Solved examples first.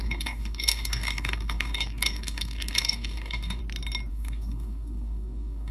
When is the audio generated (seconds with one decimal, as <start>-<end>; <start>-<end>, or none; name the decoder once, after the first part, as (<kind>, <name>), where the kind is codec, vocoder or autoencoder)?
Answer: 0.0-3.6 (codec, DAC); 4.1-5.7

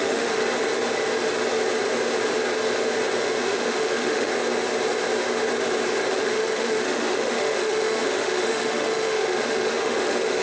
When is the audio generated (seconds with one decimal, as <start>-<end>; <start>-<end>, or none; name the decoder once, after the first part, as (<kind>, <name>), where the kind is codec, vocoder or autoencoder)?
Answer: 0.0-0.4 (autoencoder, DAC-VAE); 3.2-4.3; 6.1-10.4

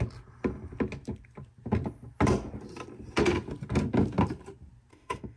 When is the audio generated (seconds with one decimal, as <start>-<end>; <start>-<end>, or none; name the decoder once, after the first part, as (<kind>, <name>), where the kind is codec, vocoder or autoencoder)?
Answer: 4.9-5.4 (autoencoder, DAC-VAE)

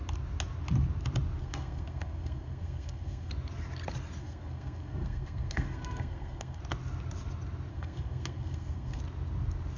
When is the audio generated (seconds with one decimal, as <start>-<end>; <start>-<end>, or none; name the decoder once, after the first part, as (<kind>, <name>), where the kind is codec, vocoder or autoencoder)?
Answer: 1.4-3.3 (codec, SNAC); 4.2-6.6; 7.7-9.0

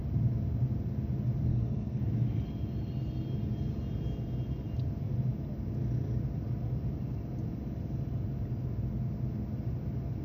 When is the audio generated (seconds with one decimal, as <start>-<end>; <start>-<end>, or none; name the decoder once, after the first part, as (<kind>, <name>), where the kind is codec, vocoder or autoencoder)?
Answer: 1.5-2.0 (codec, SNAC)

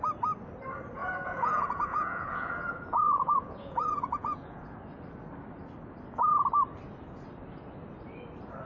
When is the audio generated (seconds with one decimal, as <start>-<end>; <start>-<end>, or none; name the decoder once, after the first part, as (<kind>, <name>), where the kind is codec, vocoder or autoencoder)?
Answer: 1.0-4.7 (vocoder, Vocos)